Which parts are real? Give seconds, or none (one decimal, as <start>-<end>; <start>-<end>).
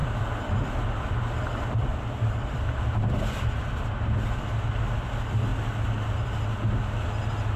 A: 1.4-1.9; 2.8-7.6